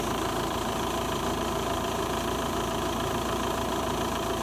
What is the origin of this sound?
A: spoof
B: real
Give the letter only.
A